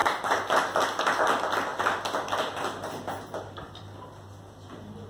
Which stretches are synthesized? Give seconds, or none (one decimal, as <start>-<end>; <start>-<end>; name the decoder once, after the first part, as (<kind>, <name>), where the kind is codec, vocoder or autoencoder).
none